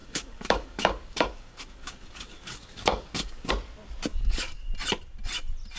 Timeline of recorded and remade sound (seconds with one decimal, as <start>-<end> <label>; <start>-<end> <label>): 0.0-3.5 remade; 3.5-4.1 recorded; 4.1-4.7 remade; 4.7-5.8 recorded